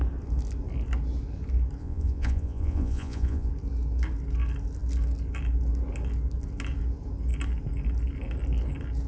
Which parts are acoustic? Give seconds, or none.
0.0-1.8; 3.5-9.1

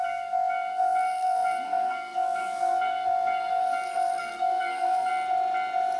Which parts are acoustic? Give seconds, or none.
5.1-6.0

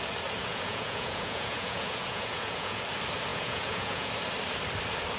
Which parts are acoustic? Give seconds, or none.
0.0-0.5; 2.8-3.3; 4.1-5.2

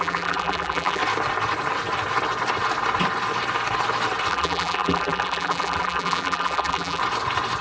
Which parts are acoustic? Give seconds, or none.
1.0-4.3; 7.0-7.6

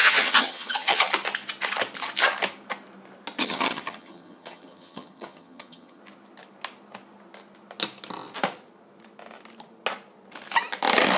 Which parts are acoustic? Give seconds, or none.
1.0-3.4; 6.0-11.2

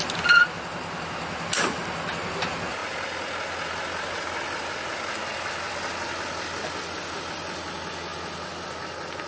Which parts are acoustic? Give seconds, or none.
0.0-9.3

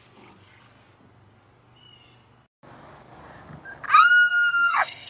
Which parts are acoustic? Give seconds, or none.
0.0-4.3